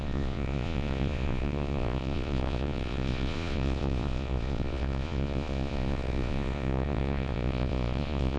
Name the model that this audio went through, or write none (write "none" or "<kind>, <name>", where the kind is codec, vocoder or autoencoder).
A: vocoder, Vocos